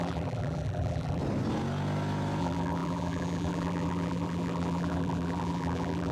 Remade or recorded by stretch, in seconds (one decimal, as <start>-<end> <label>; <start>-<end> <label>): 0.0-1.2 remade; 1.2-2.4 recorded; 2.4-6.1 remade